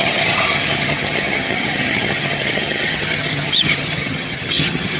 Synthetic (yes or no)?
yes